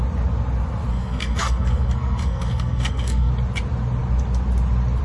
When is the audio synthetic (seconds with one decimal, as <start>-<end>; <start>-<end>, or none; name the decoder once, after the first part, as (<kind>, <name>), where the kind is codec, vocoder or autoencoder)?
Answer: 0.9-3.3 (codec, SNAC)